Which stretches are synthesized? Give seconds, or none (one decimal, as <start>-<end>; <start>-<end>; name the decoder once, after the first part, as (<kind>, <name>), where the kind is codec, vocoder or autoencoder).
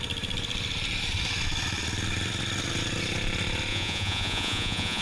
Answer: 3.7-5.0 (vocoder, Vocos)